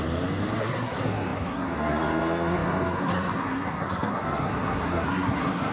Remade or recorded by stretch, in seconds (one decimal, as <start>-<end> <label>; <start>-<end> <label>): 0.0-0.6 recorded; 0.6-5.7 remade